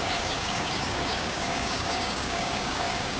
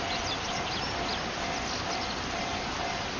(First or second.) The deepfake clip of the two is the first